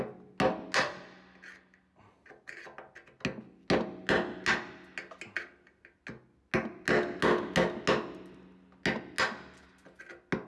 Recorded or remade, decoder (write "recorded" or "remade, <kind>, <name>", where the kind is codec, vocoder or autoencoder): recorded